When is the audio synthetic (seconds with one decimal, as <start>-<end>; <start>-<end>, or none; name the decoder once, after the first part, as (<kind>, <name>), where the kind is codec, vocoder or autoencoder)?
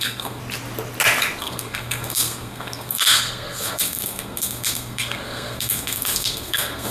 0.0-0.4 (codec, SNAC); 1.4-6.9